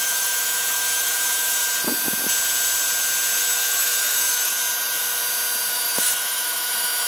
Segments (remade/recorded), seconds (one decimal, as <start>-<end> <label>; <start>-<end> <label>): 0.0-1.6 remade; 1.6-3.4 recorded; 3.4-4.5 remade; 4.5-5.7 recorded; 5.7-7.1 remade